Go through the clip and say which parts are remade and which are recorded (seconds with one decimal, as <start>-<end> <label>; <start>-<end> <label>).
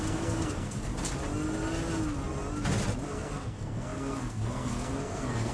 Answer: 0.0-0.9 remade; 0.9-3.1 recorded; 3.1-5.5 remade